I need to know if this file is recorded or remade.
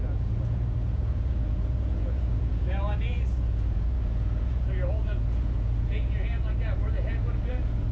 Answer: remade